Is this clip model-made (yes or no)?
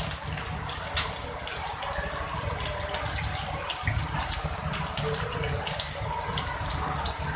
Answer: no